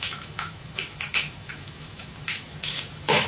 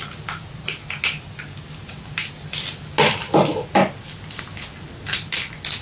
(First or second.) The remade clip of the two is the first